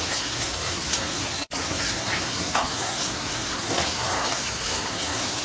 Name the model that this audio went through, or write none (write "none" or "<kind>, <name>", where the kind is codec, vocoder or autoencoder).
codec, SNAC